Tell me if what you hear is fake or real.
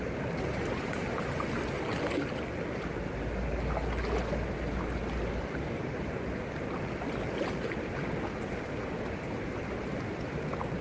real